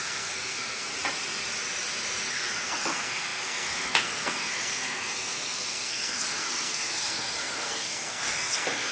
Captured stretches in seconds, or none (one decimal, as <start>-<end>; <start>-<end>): 0.9-2.3